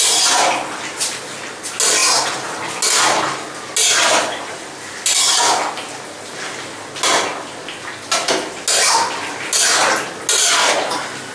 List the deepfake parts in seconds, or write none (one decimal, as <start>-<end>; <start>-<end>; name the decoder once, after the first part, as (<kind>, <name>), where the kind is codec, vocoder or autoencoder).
none